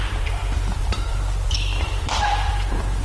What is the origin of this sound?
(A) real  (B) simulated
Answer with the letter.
A